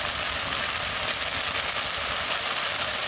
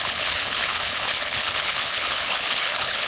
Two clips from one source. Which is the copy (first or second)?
second